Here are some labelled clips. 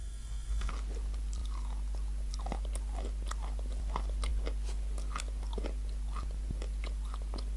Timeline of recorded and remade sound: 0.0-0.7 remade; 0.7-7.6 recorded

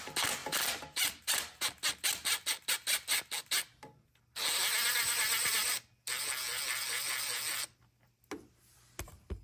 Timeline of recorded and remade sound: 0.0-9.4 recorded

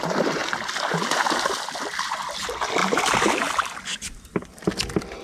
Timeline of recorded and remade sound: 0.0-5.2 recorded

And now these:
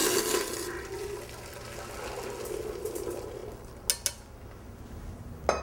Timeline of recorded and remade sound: 0.0-5.6 recorded

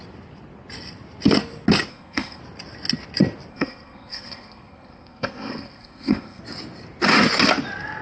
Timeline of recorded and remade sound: 0.0-1.9 recorded; 1.9-2.4 remade; 2.4-3.5 recorded; 3.5-6.4 remade; 6.4-8.0 recorded

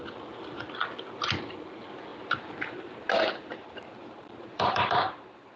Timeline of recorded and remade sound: 0.0-2.1 recorded; 2.1-5.6 remade